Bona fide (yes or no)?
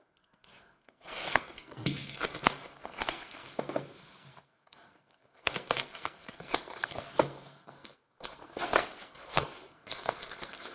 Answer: no